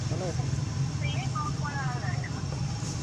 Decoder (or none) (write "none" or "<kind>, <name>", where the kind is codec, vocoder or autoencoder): none